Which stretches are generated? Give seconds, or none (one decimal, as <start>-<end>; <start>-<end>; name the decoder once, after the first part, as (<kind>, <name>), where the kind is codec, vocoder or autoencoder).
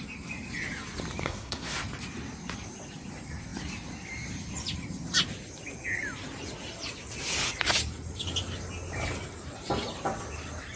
1.2-1.8 (codec, SNAC)